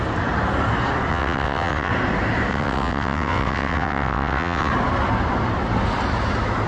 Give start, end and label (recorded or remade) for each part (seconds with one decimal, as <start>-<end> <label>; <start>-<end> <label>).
0.0-1.1 recorded; 1.1-1.9 remade; 1.9-2.5 recorded; 2.5-4.7 remade; 4.7-6.7 recorded